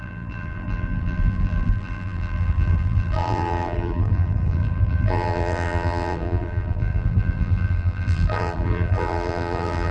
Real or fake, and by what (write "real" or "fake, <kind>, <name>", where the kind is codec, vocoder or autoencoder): fake, vocoder, BigVGAN v2